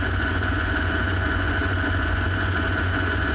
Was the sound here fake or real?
fake